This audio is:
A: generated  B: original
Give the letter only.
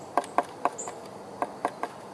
B